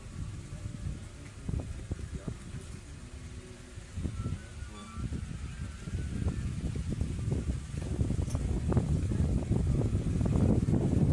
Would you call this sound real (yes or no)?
yes